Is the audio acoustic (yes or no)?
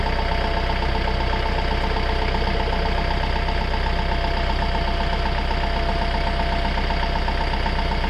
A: yes